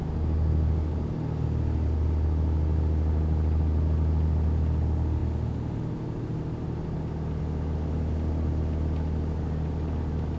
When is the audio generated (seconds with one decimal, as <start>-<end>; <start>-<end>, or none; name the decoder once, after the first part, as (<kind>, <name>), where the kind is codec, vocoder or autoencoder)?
none